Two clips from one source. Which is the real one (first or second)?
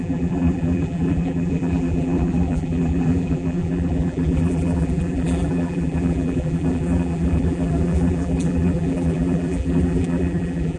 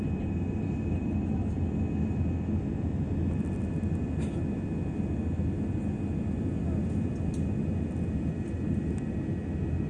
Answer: second